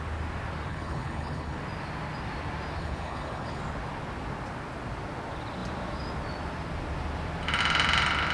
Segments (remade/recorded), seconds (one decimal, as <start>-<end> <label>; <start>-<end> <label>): 0.0-0.7 recorded; 0.7-1.6 remade; 1.6-2.8 recorded; 2.8-3.6 remade; 3.6-8.3 recorded